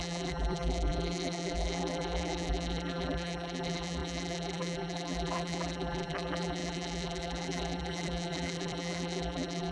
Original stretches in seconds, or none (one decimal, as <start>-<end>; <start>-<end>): none